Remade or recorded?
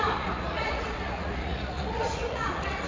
remade